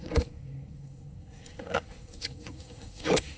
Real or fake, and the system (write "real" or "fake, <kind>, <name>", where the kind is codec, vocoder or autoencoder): fake, codec, SNAC